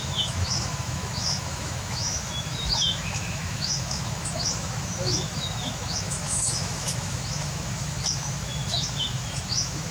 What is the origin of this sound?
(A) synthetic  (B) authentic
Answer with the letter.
A